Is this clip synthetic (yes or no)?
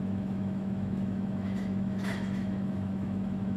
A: yes